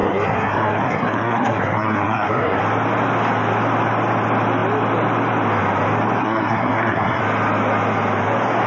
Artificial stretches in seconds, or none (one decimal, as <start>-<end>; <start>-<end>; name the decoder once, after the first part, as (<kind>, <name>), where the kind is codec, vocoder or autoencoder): 0.0-2.6 (codec, SNAC); 6.2-7.2